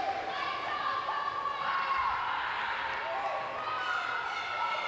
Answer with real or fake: real